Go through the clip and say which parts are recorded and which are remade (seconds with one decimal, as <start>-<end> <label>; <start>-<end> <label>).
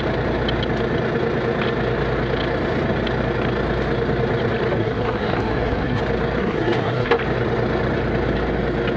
0.0-4.8 recorded; 4.8-6.0 remade; 6.0-6.4 recorded; 6.4-7.1 remade; 7.1-9.0 recorded